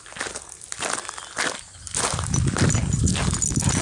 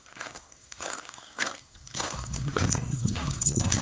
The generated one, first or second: second